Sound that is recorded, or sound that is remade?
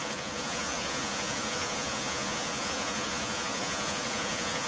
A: remade